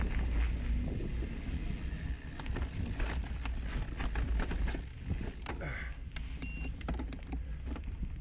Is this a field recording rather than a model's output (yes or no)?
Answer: yes